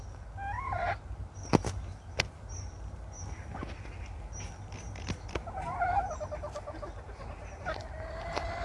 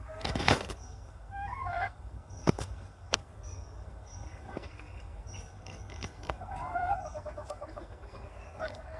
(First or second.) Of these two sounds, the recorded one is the first